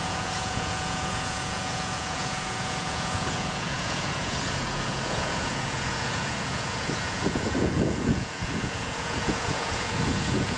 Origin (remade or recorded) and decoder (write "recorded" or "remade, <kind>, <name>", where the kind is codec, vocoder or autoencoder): remade, vocoder, Vocos